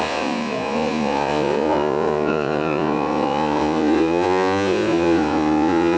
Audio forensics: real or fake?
fake